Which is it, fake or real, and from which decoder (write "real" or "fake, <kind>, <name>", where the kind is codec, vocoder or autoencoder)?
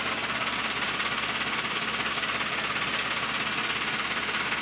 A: real